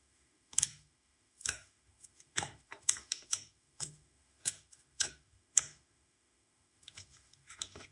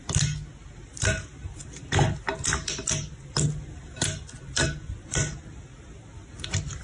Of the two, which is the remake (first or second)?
first